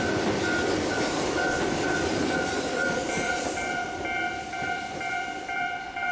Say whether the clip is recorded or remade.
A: remade